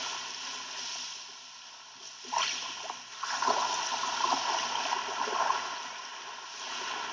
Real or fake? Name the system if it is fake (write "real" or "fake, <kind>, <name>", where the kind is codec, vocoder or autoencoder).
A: real